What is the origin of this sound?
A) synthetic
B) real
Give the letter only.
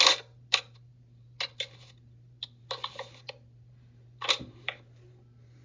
B